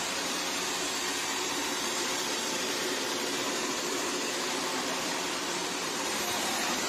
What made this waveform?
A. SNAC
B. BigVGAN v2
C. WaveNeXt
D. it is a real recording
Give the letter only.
B